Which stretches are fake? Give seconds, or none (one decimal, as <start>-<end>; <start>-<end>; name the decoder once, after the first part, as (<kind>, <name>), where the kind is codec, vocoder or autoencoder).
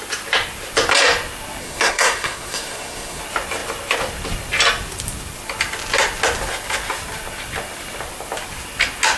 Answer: 1.6-3.2 (codec, SNAC)